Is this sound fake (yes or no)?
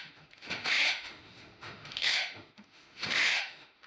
yes